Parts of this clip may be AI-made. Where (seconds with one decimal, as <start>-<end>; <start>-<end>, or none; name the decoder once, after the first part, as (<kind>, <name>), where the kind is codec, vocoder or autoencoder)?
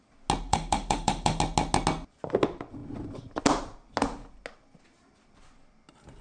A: 0.5-1.4 (autoencoder, DAC-VAE)